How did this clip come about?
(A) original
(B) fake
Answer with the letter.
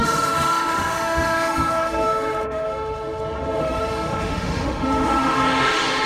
B